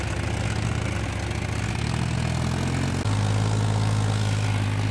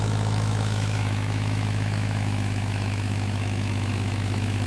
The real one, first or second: first